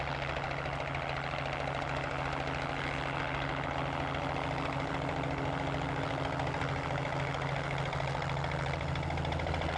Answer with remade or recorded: recorded